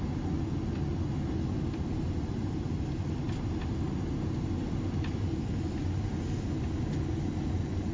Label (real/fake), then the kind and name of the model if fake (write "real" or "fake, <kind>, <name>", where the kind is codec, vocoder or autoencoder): real